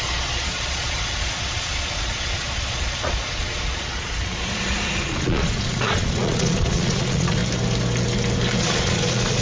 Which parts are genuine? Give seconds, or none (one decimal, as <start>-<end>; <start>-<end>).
7.4-8.6